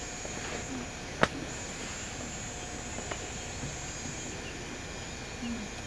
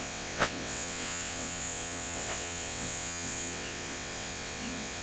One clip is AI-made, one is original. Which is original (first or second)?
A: first